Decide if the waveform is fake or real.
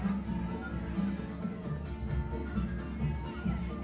real